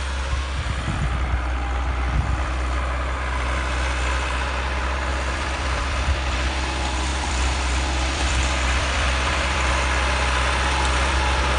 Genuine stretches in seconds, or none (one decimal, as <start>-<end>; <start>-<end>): 0.0-5.1; 6.6-7.1; 9.7-11.6